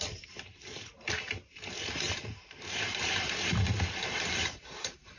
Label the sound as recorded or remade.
remade